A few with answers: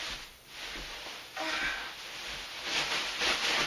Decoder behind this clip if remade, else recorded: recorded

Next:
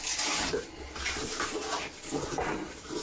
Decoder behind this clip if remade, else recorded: recorded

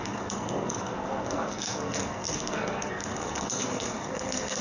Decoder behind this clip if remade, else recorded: remade, codec, SNAC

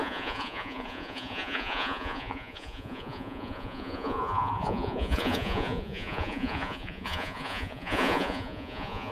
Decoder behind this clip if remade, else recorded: remade, vocoder, Vocos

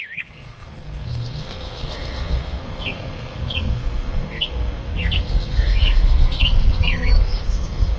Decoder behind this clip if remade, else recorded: remade, codec, SNAC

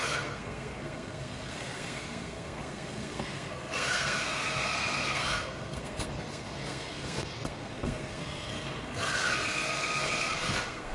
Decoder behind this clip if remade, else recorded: remade, codec, SNAC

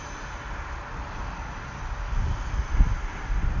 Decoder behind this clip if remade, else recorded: recorded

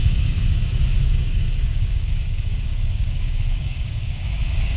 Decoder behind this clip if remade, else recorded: remade, codec, DAC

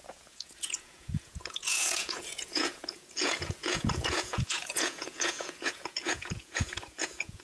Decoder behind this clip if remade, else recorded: remade, vocoder, Vocos